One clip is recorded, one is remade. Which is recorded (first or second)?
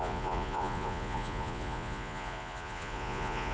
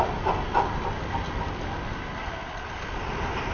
second